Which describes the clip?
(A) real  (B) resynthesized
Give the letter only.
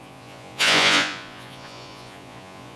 B